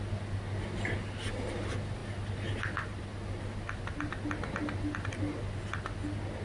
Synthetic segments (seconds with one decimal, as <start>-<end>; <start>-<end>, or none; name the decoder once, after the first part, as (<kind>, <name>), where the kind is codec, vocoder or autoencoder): none